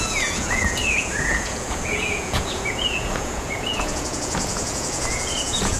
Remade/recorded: remade